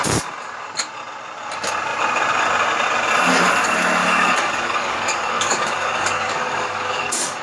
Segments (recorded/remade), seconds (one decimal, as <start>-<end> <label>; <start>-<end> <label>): 0.0-4.0 recorded; 4.0-7.4 remade